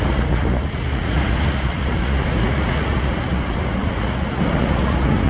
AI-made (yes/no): yes